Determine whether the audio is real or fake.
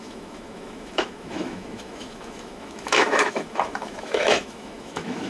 fake